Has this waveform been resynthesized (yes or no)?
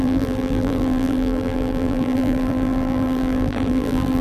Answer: yes